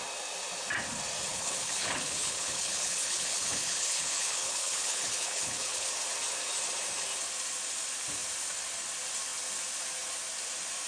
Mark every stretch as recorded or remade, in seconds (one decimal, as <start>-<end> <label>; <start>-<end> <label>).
0.0-1.3 recorded; 1.3-5.9 remade; 5.9-10.9 recorded